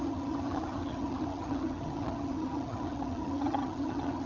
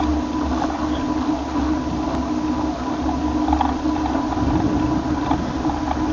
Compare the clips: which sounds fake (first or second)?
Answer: first